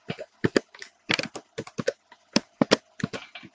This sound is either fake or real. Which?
real